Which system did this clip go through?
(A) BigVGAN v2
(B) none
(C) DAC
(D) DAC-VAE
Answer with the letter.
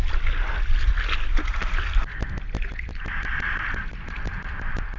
B